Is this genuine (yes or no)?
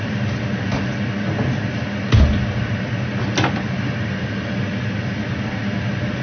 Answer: yes